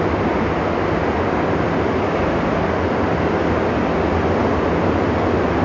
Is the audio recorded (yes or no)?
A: yes